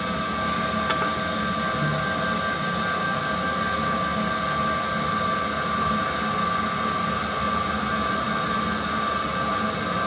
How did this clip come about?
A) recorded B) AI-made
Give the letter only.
A